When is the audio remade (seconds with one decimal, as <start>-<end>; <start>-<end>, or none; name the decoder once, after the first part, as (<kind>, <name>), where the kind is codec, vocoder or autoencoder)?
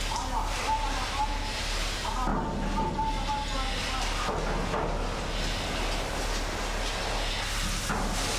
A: none